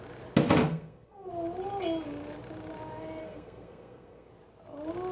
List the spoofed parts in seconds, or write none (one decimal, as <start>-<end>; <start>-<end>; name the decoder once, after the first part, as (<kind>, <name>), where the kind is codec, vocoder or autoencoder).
0.7-1.3 (codec, SNAC); 3.2-4.3